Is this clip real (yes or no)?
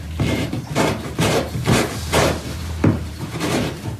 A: no